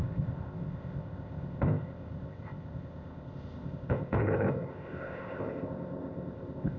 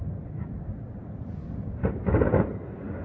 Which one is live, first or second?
second